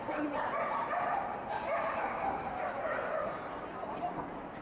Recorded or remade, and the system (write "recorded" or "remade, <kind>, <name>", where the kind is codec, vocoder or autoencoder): remade, vocoder, BigVGAN v2